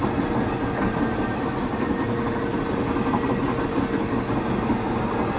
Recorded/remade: recorded